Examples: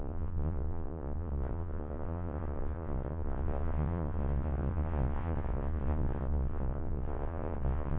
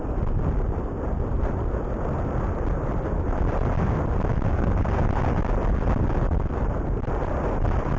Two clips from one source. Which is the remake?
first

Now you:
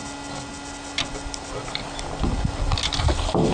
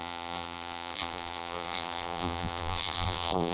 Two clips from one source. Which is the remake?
second